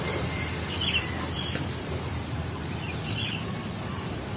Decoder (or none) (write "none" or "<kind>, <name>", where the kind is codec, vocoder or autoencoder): vocoder, BigVGAN v2